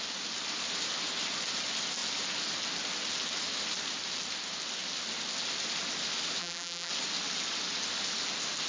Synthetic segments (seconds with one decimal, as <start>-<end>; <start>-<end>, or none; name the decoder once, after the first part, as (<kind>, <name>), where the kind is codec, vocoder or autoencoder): 6.4-6.9 (vocoder, BigVGAN v2)